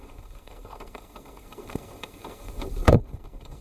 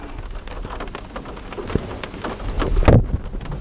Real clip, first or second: second